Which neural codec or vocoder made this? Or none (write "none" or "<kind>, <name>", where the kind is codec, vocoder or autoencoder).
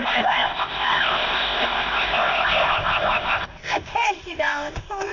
codec, ZipCodec